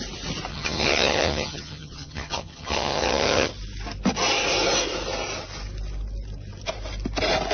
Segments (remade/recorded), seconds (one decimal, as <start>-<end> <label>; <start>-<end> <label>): 0.0-0.5 recorded; 0.5-3.5 remade; 3.5-7.5 recorded